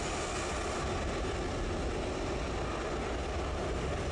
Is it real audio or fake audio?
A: real